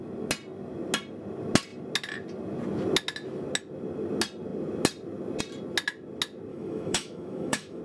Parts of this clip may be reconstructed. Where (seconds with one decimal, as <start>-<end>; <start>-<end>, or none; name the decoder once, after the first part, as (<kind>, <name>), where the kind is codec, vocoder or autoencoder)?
6.5-7.8 (autoencoder, DAC-VAE)